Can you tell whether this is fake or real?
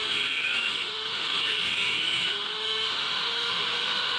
fake